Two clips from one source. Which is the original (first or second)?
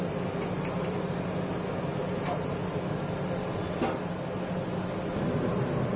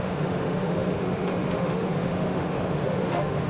first